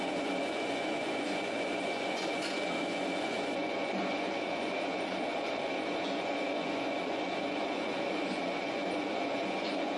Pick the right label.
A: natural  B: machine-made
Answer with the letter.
B